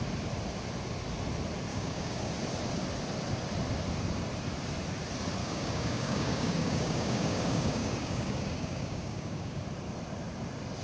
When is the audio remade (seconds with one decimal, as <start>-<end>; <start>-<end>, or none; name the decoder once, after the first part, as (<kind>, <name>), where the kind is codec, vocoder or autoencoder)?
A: 1.7-2.3 (codec, DAC); 5.4-9.6